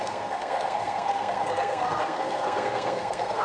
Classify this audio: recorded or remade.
remade